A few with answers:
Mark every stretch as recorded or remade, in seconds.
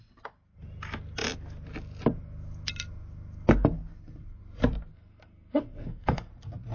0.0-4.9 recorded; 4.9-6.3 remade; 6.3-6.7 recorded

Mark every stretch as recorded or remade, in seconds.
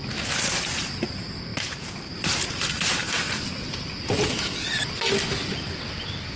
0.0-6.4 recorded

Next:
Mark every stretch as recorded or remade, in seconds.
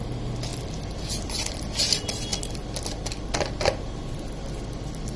0.0-5.2 recorded